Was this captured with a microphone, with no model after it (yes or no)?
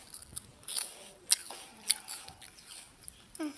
yes